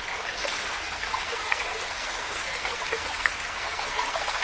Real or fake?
fake